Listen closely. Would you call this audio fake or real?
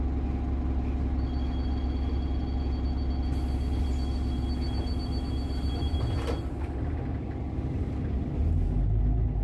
real